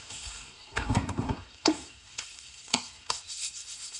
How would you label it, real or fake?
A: fake